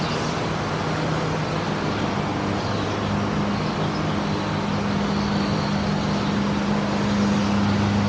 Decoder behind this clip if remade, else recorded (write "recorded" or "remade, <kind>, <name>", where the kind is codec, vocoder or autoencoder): recorded